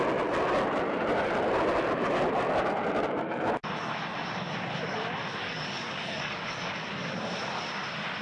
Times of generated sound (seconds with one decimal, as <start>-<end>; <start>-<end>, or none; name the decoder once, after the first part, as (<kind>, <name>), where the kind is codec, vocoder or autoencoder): 5.4-6.9 (codec, DAC)

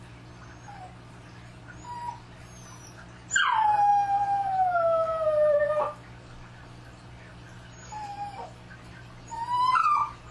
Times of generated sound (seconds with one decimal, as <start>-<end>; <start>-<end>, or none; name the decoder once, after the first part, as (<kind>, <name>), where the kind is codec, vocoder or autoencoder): none